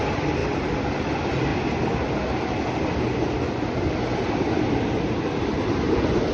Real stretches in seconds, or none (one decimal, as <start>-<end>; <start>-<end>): 0.4-1.0; 1.5-4.7